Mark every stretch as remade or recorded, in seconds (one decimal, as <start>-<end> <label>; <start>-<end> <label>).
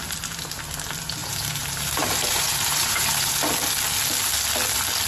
0.0-1.2 recorded; 1.2-3.3 remade; 3.3-5.1 recorded